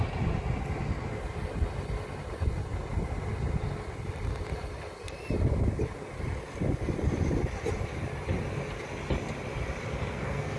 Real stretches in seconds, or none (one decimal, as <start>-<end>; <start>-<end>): 0.0-9.9